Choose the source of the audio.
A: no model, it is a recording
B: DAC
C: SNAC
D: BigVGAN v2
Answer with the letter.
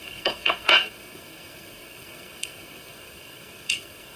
C